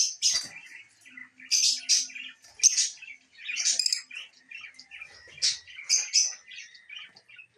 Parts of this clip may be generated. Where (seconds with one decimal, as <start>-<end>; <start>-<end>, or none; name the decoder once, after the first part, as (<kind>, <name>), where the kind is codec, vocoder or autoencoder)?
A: none